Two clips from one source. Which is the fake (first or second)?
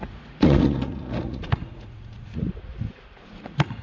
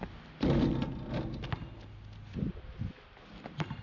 first